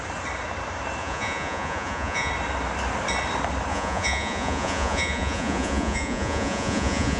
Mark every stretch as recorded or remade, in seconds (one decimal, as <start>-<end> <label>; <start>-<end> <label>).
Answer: 0.0-1.0 recorded; 1.0-2.3 remade; 2.3-3.7 recorded; 3.7-7.2 remade